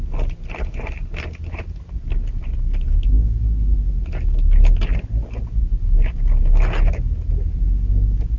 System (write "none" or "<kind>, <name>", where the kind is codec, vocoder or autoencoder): none